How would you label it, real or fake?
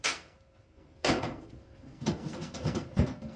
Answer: fake